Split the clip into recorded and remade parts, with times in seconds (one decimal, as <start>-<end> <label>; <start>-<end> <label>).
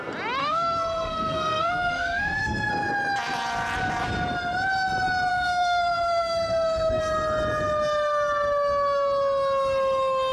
0.0-0.4 recorded; 0.4-2.7 remade; 2.7-5.3 recorded; 5.3-7.0 remade; 7.0-10.3 recorded